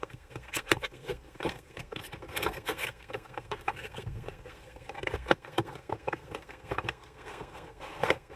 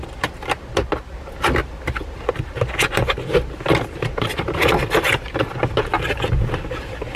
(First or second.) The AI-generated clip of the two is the first